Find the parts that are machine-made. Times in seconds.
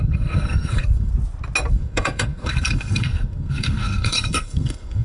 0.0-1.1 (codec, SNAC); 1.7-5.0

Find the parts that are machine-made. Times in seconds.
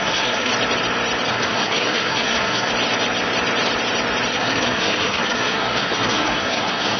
0.0-0.5 (codec, SNAC); 1.3-2.7; 4.3-7.0